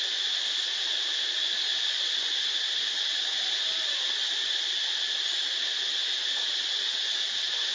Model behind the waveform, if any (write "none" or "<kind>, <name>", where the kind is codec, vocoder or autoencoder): none